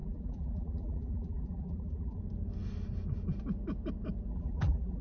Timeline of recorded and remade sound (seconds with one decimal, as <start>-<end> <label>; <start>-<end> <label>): 0.0-2.2 remade; 2.2-4.3 recorded; 4.3-5.0 remade